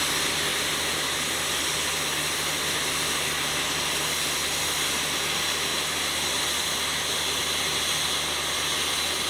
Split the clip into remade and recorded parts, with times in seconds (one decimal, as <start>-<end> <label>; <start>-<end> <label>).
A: 0.0-9.3 recorded